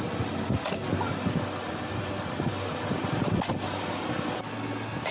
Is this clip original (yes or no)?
yes